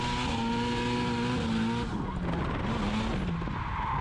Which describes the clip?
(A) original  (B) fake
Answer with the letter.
A